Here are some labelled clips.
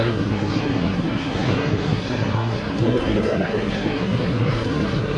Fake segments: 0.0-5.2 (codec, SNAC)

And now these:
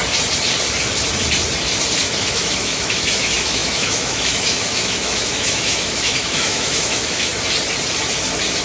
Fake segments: 2.0-7.3 (autoencoder, DAC-VAE)

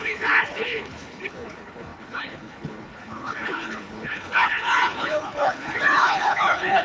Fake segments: 0.0-6.8 (codec, HILCodec)

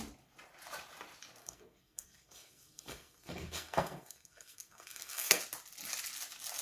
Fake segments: 1.4-5.4 (codec, SNAC)